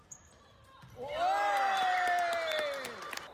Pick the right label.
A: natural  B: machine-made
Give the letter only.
A